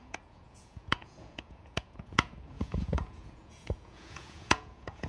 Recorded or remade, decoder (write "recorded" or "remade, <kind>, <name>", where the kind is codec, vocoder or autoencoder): remade, vocoder, Vocos